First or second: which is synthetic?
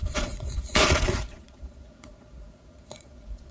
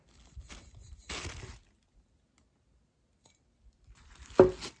first